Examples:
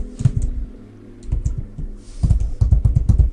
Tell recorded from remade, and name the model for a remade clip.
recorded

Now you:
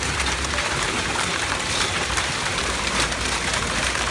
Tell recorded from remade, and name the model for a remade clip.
remade, vocoder, BigVGAN v2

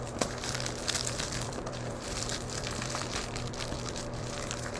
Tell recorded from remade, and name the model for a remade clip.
remade, vocoder, BigVGAN v2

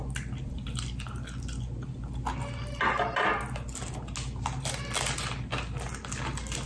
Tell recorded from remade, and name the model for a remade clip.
recorded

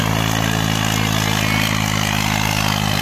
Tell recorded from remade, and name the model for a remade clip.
recorded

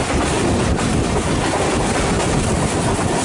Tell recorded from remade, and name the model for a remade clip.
remade, vocoder, BigVGAN v2